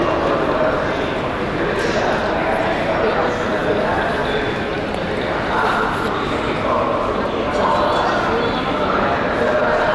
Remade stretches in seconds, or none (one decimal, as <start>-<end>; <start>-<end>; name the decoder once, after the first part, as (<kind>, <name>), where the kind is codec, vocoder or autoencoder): none